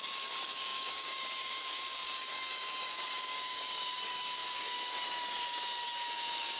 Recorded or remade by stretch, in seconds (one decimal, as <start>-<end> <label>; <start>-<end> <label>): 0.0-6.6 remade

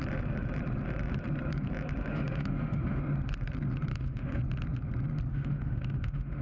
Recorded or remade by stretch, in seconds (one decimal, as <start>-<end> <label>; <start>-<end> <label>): 0.0-2.1 recorded; 2.1-3.0 remade; 3.0-3.9 recorded; 3.9-4.4 remade; 4.4-5.3 recorded; 5.3-6.4 remade

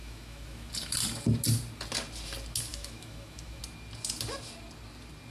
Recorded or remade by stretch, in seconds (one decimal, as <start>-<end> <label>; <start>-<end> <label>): 0.0-0.7 remade; 0.7-2.7 recorded; 2.7-3.6 remade; 3.6-5.3 recorded

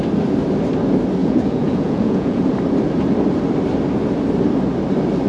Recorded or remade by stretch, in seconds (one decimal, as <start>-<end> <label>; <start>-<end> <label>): 0.0-1.2 recorded; 1.2-2.5 remade; 2.5-5.3 recorded

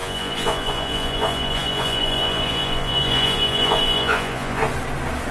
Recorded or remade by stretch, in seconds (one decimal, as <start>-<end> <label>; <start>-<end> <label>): 0.0-4.6 remade; 4.6-5.3 recorded

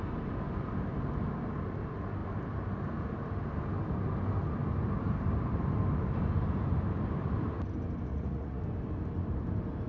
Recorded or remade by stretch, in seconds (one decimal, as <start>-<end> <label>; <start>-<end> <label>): 0.0-8.1 recorded; 8.1-8.6 remade; 8.6-9.9 recorded